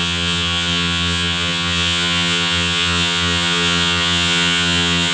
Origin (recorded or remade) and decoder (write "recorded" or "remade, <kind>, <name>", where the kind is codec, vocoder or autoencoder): remade, vocoder, HiFi-GAN